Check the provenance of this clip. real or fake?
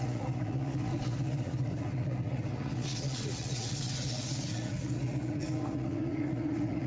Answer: fake